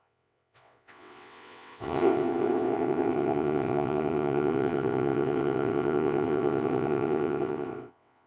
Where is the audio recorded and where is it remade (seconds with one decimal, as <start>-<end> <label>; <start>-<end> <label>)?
0.0-8.3 remade